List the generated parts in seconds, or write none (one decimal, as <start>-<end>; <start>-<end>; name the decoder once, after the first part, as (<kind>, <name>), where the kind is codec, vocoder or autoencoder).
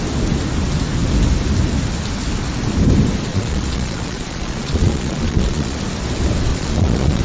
3.3-5.8 (vocoder, Vocos); 6.5-7.2